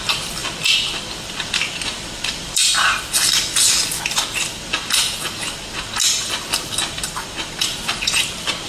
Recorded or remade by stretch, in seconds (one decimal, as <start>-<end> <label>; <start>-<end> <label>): 0.0-8.7 recorded